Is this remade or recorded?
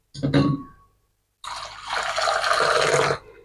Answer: recorded